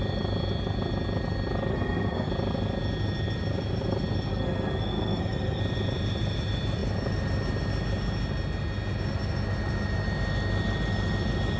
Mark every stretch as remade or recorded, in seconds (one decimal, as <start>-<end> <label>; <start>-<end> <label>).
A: 0.0-1.7 recorded; 1.7-2.3 remade; 2.3-4.3 recorded; 4.3-5.6 remade; 5.6-11.6 recorded